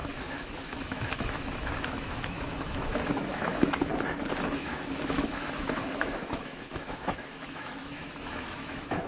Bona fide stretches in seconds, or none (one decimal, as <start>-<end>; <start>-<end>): 3.9-4.5